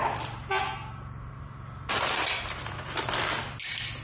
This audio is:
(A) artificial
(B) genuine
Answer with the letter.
B